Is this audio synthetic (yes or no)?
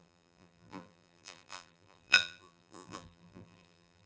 yes